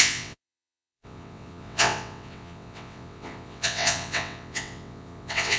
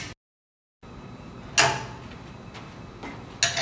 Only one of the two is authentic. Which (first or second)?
second